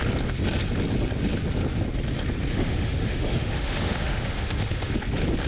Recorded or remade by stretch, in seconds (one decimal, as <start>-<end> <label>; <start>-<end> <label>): 0.0-2.5 recorded; 2.5-4.9 remade; 4.9-5.5 recorded